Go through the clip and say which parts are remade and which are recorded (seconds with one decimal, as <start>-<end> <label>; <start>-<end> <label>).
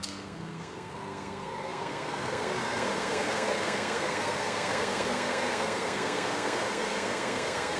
0.0-7.8 remade